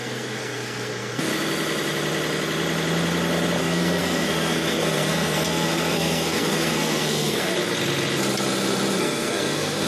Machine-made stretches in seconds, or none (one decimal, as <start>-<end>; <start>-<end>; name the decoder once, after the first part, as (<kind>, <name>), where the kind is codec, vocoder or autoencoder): 0.0-1.3 (codec, SNAC); 3.6-7.5; 9.0-9.9